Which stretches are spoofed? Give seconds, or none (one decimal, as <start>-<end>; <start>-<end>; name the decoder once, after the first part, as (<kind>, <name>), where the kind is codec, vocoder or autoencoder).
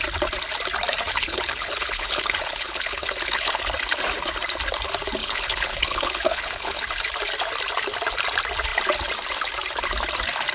1.1-3.6 (codec, HILCodec); 5.2-6.8